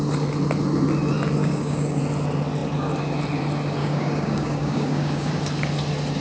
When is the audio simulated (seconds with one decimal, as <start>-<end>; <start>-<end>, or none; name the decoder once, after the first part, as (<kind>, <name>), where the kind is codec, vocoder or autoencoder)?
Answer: 1.4-2.0 (codec, DAC); 3.8-5.3